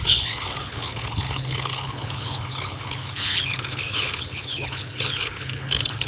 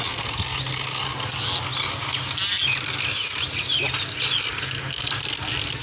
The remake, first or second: first